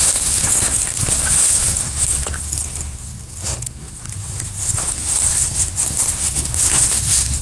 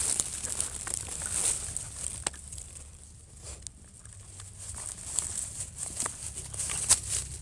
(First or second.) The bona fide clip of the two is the second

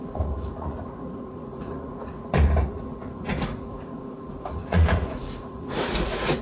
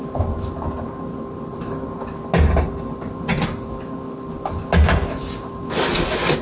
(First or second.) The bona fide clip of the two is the second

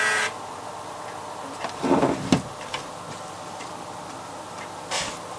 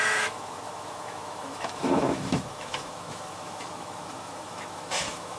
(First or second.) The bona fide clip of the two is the first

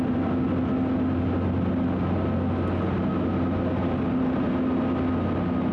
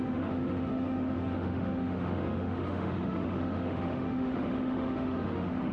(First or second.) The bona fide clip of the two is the first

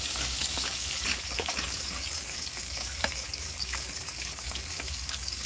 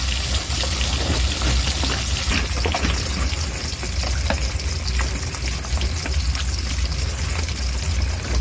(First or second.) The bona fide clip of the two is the second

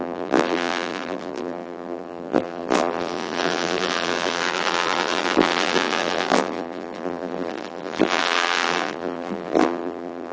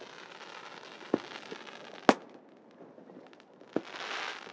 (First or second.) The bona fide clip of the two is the second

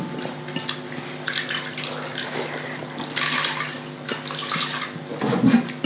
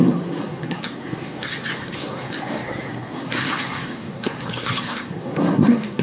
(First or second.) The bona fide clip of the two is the first